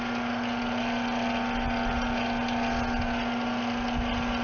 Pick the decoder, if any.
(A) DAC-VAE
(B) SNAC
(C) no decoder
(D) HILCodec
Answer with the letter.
C